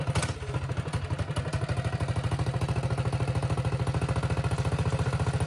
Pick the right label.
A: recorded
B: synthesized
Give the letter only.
A